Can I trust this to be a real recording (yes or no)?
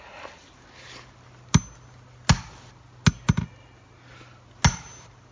yes